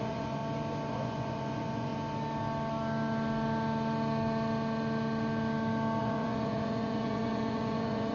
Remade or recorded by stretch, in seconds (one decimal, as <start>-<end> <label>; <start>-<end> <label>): 0.0-0.4 remade; 0.4-0.9 recorded; 0.9-1.9 remade; 1.9-6.0 recorded; 6.0-8.1 remade